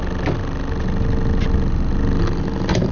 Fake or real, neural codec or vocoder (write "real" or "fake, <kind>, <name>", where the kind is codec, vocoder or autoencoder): real